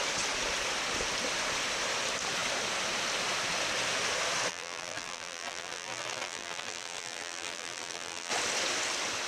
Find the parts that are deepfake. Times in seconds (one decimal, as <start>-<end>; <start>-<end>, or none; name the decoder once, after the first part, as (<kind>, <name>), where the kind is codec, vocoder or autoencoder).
4.5-8.3 (vocoder, BigVGAN v2)